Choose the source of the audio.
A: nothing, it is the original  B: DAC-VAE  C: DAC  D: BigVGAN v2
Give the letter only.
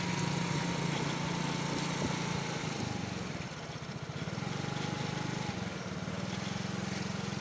A